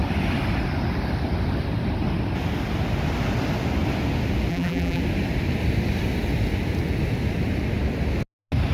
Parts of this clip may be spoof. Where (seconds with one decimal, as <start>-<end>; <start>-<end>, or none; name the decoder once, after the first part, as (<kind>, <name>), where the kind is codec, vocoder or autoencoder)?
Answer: 4.5-5.0 (vocoder, BigVGAN v2)